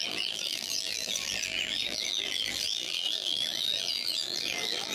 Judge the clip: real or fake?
fake